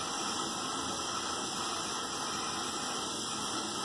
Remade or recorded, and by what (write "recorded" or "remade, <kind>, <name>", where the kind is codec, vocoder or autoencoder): recorded